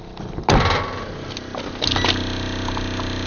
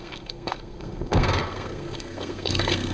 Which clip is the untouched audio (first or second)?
first